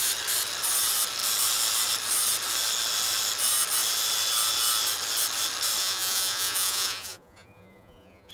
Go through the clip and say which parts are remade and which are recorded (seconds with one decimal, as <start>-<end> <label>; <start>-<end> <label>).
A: 0.0-5.8 recorded; 5.8-8.3 remade